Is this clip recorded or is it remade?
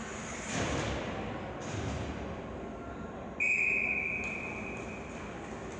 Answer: recorded